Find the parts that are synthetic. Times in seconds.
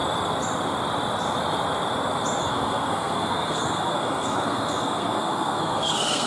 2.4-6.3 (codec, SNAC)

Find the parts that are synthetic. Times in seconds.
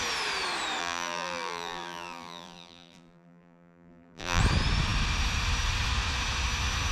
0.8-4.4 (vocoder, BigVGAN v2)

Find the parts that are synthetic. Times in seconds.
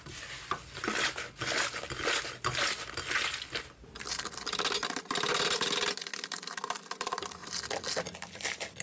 none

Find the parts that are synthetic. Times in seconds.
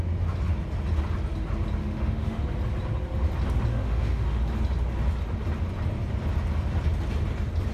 1.8-2.4 (autoencoder, DAC-VAE); 3.7-4.4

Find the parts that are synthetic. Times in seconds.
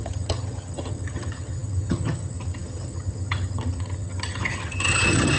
0.0-5.4 (vocoder, HiFi-GAN)